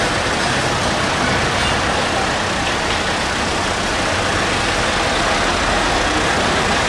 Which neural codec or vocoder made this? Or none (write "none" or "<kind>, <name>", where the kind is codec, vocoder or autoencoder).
none